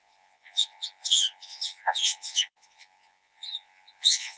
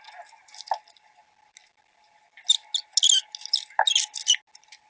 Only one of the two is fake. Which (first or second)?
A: first